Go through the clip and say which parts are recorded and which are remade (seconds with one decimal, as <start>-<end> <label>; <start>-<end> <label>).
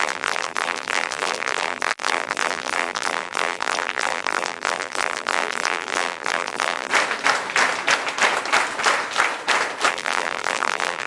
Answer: 0.0-6.9 remade; 6.9-9.9 recorded; 9.9-11.1 remade